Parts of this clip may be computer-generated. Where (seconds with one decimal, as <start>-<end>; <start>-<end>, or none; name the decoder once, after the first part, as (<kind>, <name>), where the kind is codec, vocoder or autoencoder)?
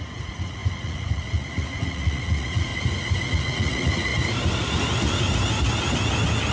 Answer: 0.0-2.7 (vocoder, Vocos); 3.3-4.1